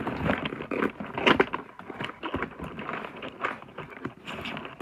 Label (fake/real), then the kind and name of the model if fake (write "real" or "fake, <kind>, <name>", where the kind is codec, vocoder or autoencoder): real